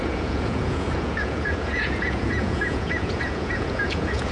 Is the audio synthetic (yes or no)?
yes